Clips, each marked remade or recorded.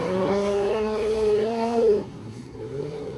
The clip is remade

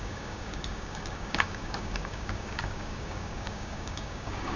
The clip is remade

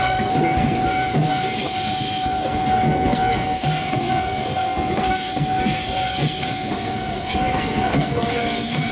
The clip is remade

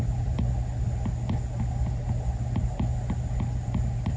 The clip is recorded